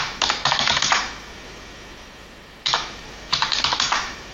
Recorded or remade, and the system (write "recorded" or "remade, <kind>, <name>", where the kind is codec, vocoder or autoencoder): remade, autoencoder, DAC-VAE